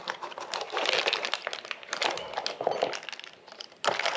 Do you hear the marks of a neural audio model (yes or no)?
no